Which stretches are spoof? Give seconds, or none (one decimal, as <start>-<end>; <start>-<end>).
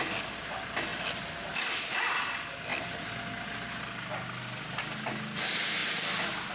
none